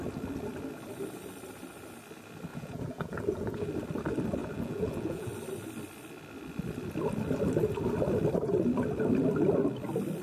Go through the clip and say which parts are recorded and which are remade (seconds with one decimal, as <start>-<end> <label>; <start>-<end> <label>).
0.0-2.5 recorded; 2.5-3.7 remade; 3.7-4.4 recorded; 4.4-5.3 remade; 5.3-10.2 recorded